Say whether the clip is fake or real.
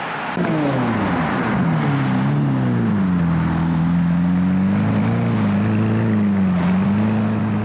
real